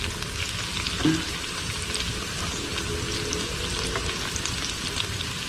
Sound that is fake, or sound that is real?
real